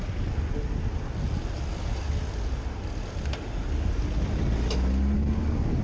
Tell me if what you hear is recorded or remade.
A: recorded